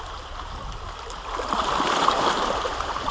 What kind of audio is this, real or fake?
real